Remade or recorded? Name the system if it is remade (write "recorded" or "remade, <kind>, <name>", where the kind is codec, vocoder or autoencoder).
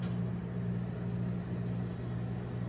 recorded